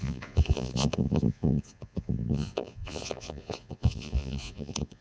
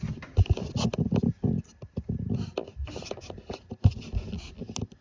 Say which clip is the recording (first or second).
second